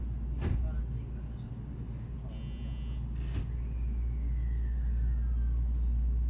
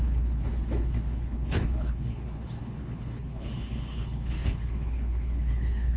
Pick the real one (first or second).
first